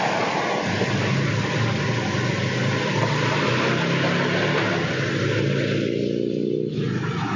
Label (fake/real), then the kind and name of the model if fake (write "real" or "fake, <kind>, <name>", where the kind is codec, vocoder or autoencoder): real